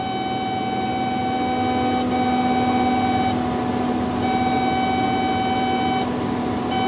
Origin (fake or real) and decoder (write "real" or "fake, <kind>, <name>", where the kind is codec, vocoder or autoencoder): real